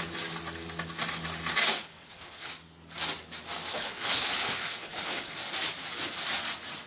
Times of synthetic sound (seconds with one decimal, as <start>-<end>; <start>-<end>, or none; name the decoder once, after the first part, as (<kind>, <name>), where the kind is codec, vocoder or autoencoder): 1.8-2.5 (codec, HILCodec); 3.7-5.4